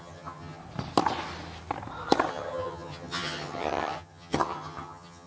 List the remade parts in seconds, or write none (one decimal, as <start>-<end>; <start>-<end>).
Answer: 0.0-0.6; 2.3-5.3